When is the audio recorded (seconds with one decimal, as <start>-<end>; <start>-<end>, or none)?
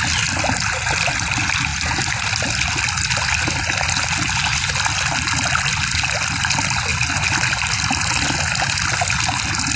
0.0-9.8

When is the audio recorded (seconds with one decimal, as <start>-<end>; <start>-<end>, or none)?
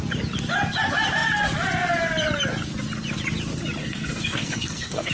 0.0-3.8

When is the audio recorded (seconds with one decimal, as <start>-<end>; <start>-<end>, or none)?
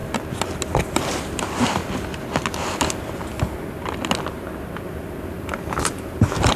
0.0-1.1; 1.8-5.8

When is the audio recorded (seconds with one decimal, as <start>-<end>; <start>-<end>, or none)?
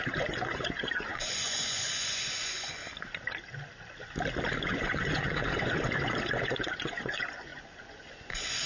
2.8-4.7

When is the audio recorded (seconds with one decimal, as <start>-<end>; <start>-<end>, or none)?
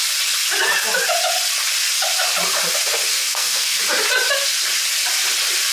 0.0-3.1; 3.8-5.7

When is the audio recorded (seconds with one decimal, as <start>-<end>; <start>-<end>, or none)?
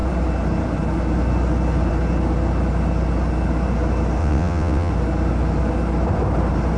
0.0-4.2; 4.9-6.8